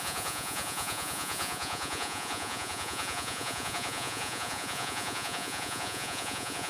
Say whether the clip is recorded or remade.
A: remade